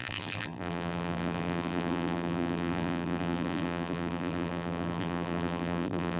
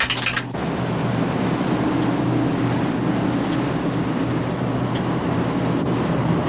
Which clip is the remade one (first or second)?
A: first